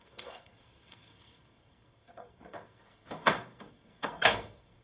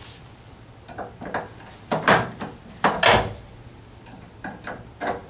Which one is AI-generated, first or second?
first